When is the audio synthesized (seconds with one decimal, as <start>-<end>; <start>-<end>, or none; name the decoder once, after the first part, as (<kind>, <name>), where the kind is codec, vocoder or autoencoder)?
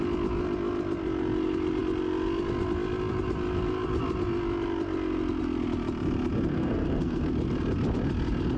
6.5-7.3 (codec, SNAC)